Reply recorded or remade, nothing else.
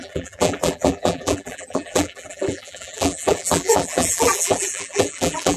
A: remade